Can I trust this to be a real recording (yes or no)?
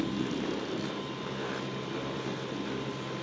yes